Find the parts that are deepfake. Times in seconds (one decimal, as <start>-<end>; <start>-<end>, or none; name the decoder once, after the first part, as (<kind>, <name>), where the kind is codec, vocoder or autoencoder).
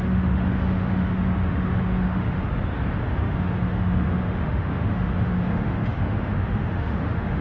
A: 0.0-2.4 (autoencoder, DAC-VAE); 3.1-7.4